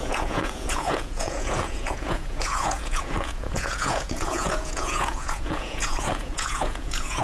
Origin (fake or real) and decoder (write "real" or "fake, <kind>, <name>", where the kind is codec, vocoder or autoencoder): fake, vocoder, Vocos